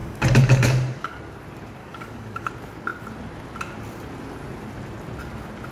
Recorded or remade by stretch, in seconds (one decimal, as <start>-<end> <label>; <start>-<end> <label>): 0.0-1.2 remade; 1.2-1.8 recorded; 1.8-2.5 remade; 2.5-5.7 recorded